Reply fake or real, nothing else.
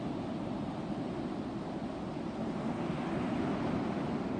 real